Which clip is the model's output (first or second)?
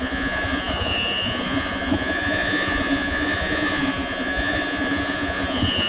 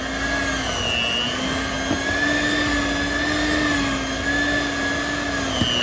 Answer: first